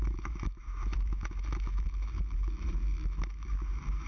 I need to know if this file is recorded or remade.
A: remade